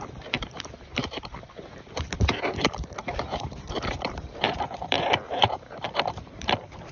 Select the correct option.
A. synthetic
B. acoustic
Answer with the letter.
A